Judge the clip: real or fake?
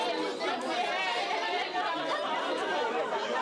real